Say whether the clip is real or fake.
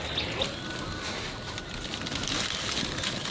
real